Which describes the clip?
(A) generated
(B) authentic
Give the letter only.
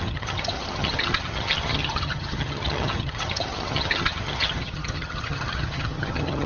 A